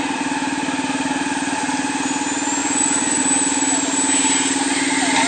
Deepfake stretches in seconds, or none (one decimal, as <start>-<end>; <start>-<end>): 2.6-3.2